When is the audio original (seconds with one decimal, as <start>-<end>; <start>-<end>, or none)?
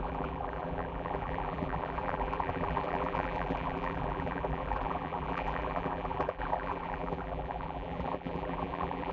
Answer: none